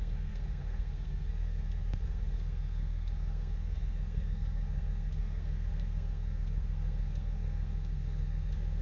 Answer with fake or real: fake